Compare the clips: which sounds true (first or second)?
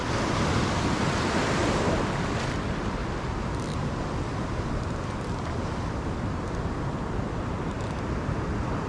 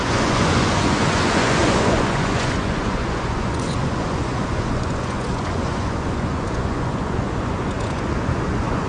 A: first